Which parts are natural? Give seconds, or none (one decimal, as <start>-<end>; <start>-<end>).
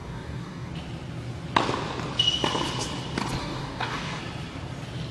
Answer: 0.7-3.4; 4.2-5.1